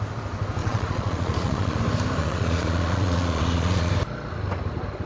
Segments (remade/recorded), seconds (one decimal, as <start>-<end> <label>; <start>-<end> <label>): 0.0-0.6 recorded; 0.6-1.8 remade; 1.8-2.2 recorded; 2.2-3.9 remade; 3.9-5.1 recorded